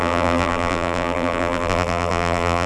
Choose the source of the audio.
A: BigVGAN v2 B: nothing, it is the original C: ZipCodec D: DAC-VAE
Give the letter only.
A